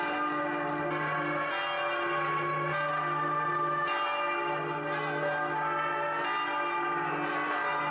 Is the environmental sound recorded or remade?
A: recorded